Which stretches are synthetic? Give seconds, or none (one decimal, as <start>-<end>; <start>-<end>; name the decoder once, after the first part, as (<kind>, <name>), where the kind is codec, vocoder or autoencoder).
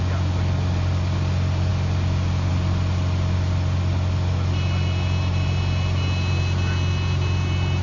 none